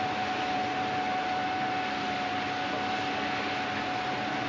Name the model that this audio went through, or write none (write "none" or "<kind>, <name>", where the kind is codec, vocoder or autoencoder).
none